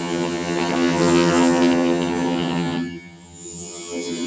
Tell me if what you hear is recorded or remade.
remade